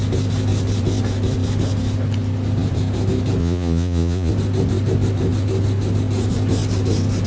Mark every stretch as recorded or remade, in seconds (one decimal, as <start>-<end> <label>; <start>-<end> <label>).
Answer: 0.0-3.4 recorded; 3.4-4.3 remade; 4.3-7.3 recorded